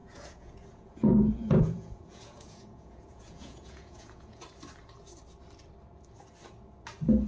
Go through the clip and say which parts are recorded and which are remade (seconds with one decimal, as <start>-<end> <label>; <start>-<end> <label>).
0.0-4.4 remade; 4.4-7.3 recorded